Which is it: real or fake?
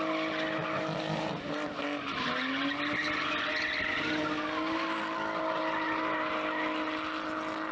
real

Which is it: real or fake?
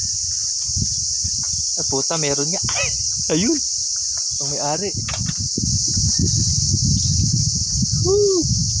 real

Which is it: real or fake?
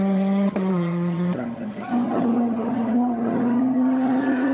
fake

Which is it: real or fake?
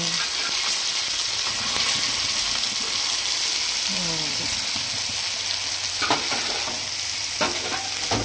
real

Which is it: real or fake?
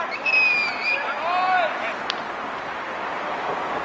real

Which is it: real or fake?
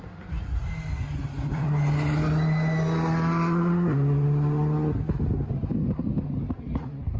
real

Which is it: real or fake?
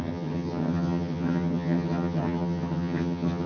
fake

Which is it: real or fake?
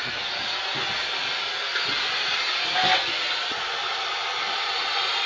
real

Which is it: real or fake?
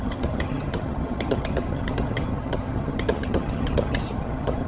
fake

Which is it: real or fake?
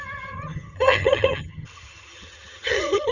fake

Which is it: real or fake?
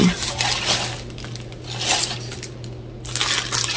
real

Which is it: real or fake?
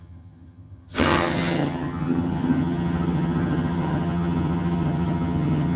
fake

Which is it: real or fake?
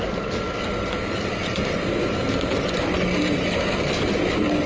real